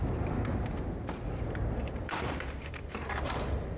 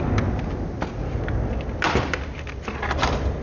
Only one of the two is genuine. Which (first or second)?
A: second